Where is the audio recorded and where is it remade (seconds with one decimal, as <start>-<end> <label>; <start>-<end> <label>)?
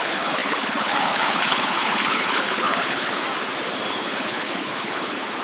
0.0-3.2 remade; 3.2-3.9 recorded; 3.9-5.4 remade